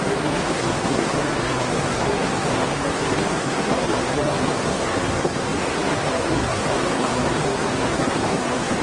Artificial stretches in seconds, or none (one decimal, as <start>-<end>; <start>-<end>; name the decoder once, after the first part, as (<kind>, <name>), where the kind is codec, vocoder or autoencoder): 0.0-8.8 (codec, SNAC)